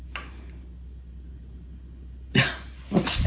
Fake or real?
real